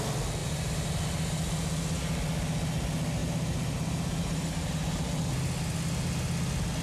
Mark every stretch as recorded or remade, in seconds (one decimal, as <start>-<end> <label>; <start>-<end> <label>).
0.0-0.4 recorded; 0.4-0.9 remade; 0.9-3.2 recorded; 3.2-4.7 remade; 4.7-6.8 recorded